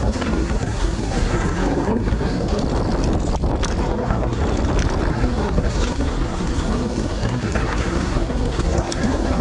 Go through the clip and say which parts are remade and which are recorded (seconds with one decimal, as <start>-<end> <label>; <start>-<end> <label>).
0.0-2.6 remade; 2.6-3.8 recorded; 3.8-4.4 remade; 4.4-5.1 recorded; 5.1-9.4 remade